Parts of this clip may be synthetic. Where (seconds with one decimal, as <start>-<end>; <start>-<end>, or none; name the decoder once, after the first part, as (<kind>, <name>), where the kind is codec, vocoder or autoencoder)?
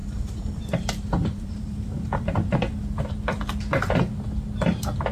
0.0-3.1 (vocoder, BigVGAN v2)